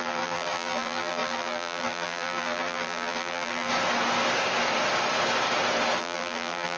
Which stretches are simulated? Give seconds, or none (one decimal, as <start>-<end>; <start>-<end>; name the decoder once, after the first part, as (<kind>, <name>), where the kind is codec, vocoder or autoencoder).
0.0-3.7 (vocoder, BigVGAN v2); 6.0-6.8